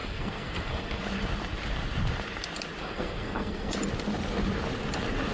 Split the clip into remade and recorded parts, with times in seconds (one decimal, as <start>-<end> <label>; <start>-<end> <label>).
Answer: 0.0-1.0 remade; 1.0-2.8 recorded; 2.8-3.7 remade; 3.7-5.3 recorded